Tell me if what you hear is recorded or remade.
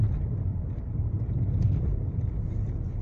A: recorded